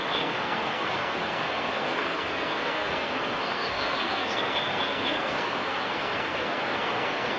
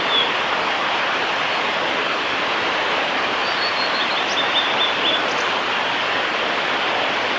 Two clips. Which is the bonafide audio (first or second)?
second